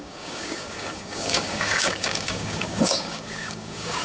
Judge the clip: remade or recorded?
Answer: remade